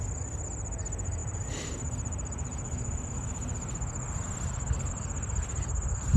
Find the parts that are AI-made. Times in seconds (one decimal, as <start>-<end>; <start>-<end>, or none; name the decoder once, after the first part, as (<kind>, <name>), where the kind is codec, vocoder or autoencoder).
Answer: 0.0-6.2 (vocoder, BigVGAN v2)